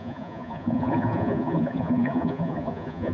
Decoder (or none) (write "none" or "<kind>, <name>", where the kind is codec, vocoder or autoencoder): vocoder, Vocos